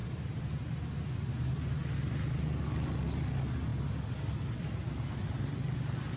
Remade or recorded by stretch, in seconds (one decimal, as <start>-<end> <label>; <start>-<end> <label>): 0.0-6.2 recorded